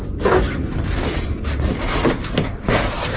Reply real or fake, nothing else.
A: real